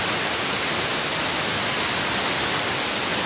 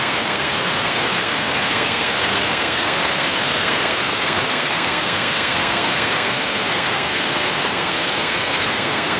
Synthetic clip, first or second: second